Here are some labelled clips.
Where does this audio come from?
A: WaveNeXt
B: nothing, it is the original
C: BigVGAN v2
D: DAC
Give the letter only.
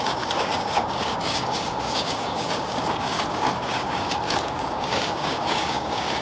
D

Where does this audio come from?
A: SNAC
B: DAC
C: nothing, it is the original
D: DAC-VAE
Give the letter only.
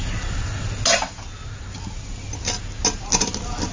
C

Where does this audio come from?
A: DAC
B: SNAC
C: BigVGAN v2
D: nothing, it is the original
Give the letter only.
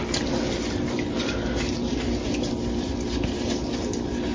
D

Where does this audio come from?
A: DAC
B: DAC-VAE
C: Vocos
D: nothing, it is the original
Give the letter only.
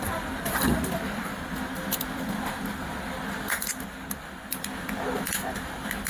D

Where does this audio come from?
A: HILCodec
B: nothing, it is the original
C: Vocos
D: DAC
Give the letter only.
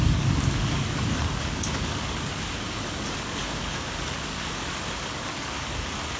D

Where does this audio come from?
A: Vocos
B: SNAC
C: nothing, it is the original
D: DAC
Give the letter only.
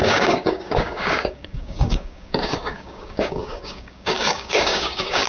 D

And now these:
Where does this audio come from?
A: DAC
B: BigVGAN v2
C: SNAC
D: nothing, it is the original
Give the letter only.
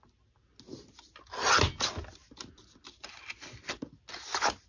D